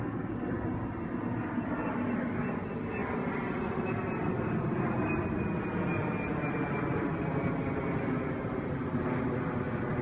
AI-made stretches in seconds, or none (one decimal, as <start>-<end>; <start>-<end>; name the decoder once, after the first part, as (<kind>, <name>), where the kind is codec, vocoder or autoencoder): none